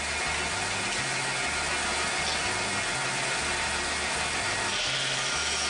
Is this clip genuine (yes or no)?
yes